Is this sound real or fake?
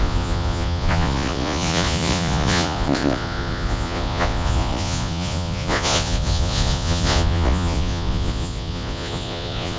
fake